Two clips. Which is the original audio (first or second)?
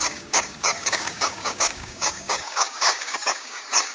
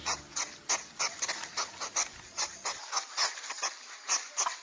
second